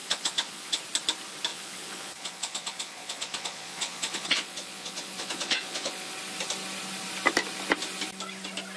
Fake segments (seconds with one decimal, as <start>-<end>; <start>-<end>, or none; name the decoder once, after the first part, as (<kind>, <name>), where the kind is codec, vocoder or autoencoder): 0.0-0.8 (vocoder, Vocos); 1.5-6.1